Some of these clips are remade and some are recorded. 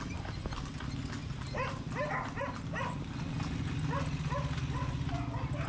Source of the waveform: recorded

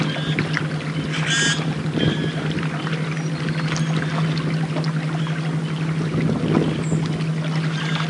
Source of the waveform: recorded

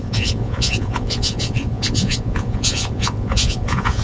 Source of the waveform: remade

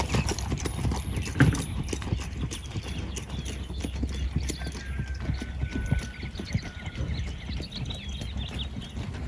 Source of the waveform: recorded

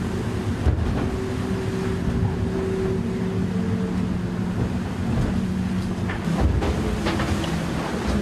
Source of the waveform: recorded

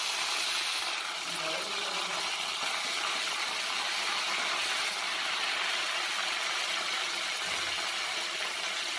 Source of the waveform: recorded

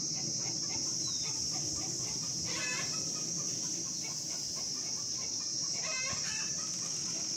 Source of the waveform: recorded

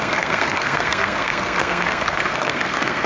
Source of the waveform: remade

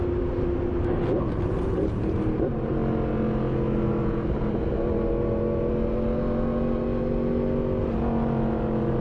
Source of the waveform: recorded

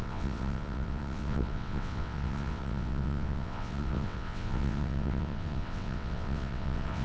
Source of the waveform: remade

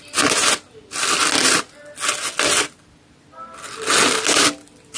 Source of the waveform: recorded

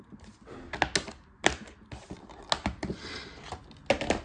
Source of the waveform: recorded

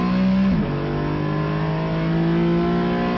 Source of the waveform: recorded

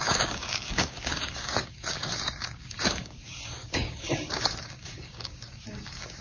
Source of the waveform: remade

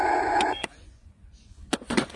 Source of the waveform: remade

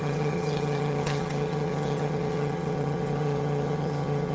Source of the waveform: remade